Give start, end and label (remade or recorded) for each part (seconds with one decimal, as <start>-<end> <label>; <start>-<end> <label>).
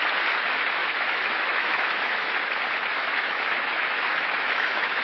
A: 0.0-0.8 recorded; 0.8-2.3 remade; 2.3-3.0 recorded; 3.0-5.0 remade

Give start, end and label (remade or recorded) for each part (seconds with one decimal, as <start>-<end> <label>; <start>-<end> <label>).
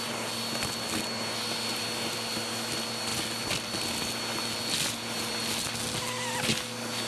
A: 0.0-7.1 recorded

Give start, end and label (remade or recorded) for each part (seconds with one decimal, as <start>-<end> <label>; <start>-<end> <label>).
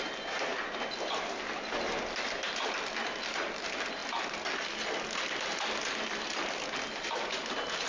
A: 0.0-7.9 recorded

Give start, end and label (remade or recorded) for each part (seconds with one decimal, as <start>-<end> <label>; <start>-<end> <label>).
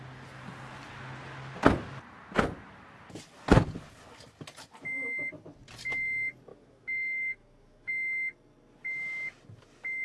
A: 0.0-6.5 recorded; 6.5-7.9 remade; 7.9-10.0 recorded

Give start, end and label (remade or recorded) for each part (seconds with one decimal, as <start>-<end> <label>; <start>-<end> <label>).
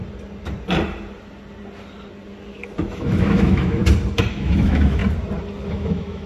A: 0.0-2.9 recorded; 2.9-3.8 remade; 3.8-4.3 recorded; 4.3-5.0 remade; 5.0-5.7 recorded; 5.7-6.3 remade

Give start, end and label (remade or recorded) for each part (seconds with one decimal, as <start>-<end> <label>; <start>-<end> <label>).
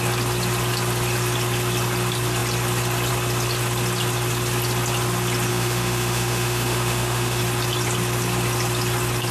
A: 0.0-5.5 recorded; 5.5-7.4 remade; 7.4-9.3 recorded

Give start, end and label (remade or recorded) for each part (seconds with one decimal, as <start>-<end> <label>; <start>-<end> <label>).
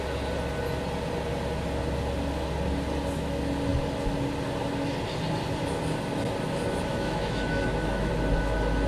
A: 0.0-6.9 recorded; 6.9-8.1 remade; 8.1-8.9 recorded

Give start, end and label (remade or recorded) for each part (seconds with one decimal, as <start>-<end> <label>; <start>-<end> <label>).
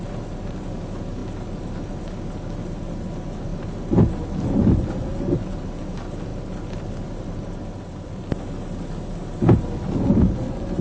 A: 0.0-10.8 recorded